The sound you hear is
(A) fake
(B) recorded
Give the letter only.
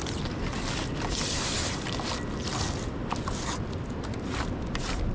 B